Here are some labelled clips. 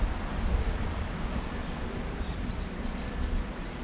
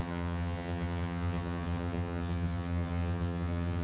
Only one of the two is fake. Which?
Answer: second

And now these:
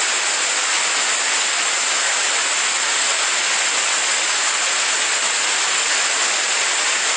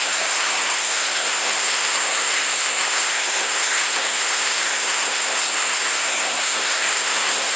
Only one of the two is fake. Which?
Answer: second